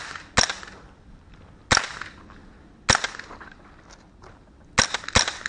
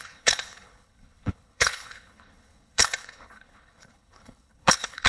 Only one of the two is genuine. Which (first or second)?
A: first